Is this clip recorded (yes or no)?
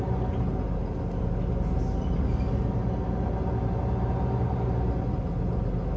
yes